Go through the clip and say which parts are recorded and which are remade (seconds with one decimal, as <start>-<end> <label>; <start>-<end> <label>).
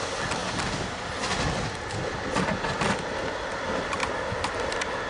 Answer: 0.0-0.4 remade; 0.4-1.9 recorded; 1.9-4.0 remade; 4.0-4.5 recorded; 4.5-5.1 remade